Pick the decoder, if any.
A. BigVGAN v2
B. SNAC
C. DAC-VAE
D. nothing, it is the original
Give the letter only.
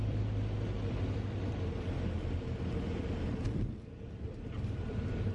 A